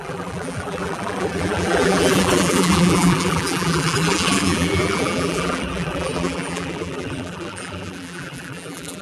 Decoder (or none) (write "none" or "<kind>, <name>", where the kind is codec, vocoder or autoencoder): vocoder, BigVGAN v2